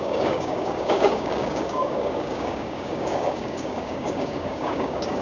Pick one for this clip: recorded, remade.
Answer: remade